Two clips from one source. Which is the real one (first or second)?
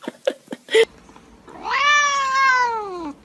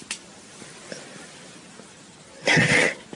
first